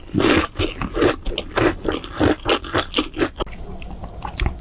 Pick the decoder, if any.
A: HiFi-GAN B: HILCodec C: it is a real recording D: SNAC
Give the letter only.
C